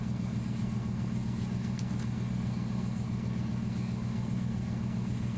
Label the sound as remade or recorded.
remade